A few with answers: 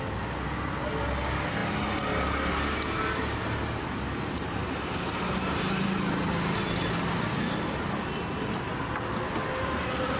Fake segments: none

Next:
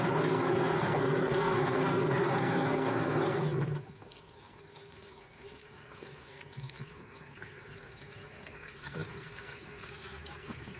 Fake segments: 0.0-10.8 (codec, SNAC)

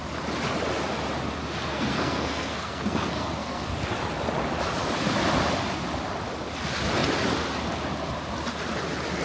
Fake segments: 1.7-3.7 (codec, SNAC)

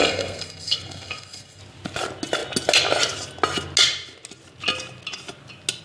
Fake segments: 0.0-1.6 (codec, SNAC)

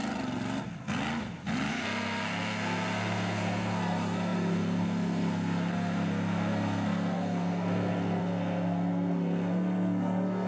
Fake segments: 1.7-10.5 (codec, SNAC)

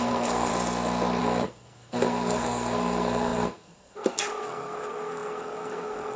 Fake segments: 0.0-0.5 (codec, SNAC); 1.2-6.2